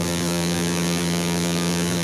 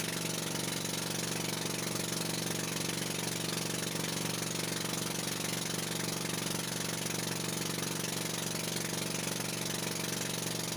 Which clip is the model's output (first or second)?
first